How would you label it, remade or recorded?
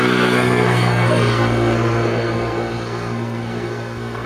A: remade